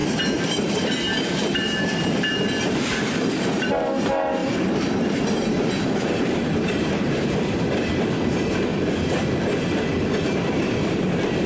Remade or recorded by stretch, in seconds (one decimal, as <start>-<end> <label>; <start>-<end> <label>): 0.0-8.7 remade; 8.7-10.2 recorded; 10.2-11.5 remade